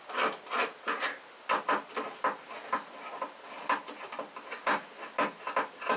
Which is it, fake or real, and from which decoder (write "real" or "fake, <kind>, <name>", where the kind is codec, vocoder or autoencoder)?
real